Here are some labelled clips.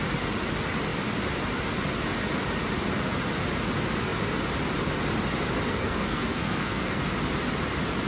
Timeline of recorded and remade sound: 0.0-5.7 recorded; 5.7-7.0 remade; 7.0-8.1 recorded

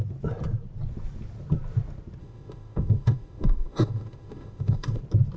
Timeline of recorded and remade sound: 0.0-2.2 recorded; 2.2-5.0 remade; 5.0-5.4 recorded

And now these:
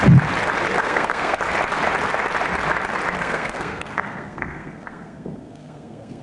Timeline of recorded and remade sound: 0.0-0.8 recorded; 0.8-1.4 remade; 1.4-3.2 recorded; 3.2-6.2 remade